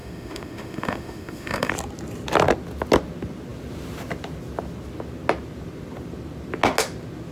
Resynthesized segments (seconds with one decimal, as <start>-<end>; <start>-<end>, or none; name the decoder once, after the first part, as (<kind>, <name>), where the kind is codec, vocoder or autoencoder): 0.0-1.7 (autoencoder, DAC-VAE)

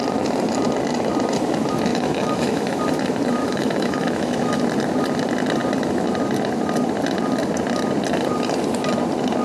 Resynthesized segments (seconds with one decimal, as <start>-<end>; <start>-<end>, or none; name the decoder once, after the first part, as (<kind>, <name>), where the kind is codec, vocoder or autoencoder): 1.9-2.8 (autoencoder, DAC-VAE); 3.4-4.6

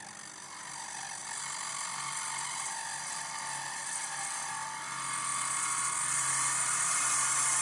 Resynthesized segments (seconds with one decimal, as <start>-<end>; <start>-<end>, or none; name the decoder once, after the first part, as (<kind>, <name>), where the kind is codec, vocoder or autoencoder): none